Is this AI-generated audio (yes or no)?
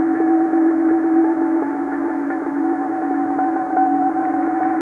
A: yes